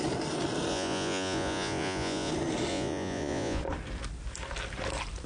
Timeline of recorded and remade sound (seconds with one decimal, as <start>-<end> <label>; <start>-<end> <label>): 0.0-0.7 recorded; 0.7-2.3 remade; 2.3-2.7 recorded; 2.7-3.6 remade; 3.6-5.3 recorded